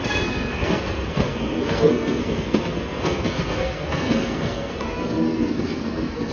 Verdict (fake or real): fake